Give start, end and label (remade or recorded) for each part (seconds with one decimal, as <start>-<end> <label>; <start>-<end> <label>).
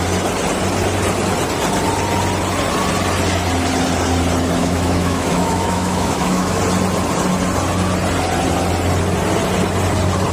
0.0-4.6 recorded; 4.6-6.6 remade; 6.6-10.3 recorded